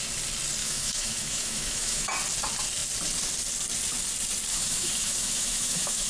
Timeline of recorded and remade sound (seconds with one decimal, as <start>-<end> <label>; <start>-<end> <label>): 0.0-0.6 recorded; 0.6-2.1 remade; 2.1-4.5 recorded; 4.5-6.1 remade